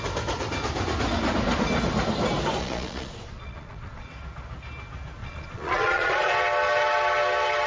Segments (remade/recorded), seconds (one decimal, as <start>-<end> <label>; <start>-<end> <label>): 0.0-2.6 recorded; 2.6-4.1 remade; 4.1-5.2 recorded; 5.2-6.3 remade; 6.3-7.7 recorded